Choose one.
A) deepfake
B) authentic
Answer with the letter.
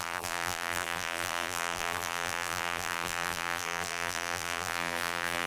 A